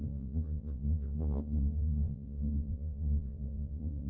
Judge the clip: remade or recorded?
remade